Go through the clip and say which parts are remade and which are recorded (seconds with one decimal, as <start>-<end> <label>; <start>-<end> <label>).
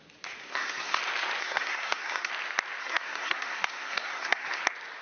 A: 0.0-0.4 recorded; 0.4-1.0 remade; 1.0-1.4 recorded; 1.4-2.3 remade; 2.3-2.8 recorded; 2.8-4.6 remade; 4.6-5.0 recorded